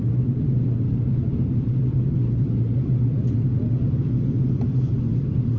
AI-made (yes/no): no